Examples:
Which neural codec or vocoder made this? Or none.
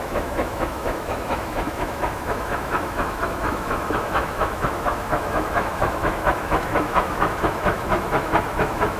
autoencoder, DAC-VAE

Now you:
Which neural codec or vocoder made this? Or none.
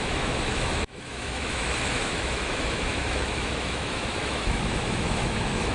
autoencoder, DAC-VAE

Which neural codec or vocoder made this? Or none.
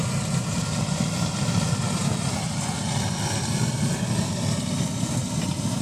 none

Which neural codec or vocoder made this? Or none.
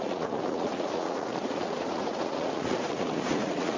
vocoder, Vocos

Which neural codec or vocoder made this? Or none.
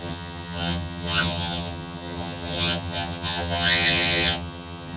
vocoder, HiFi-GAN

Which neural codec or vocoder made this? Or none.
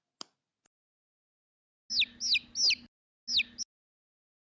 none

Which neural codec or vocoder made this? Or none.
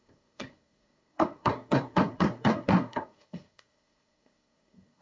codec, SNAC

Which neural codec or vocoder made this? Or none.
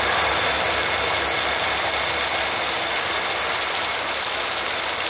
none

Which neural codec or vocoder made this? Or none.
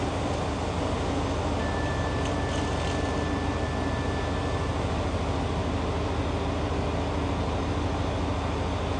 none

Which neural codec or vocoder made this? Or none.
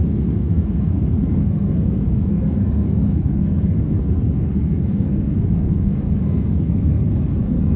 codec, SNAC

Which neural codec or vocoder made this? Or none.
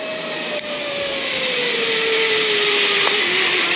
none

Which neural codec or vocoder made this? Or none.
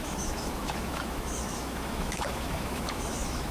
autoencoder, DAC-VAE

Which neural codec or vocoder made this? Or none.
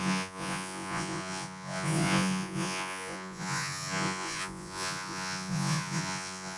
vocoder, Vocos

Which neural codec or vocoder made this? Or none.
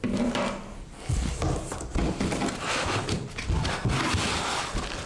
none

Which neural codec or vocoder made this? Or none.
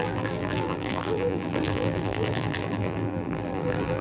vocoder, BigVGAN v2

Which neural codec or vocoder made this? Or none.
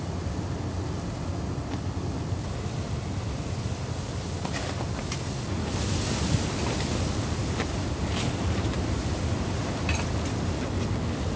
none